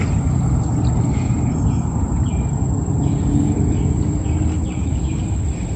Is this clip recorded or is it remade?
recorded